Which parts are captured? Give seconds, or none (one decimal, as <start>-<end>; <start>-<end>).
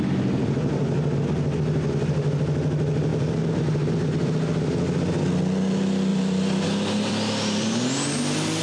0.0-6.1; 7.1-8.6